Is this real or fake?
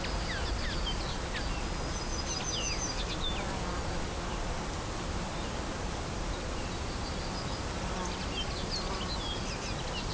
real